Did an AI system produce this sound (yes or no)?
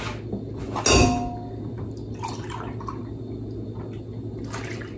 no